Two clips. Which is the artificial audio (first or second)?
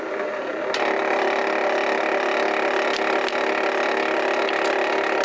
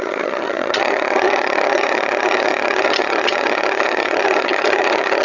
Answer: second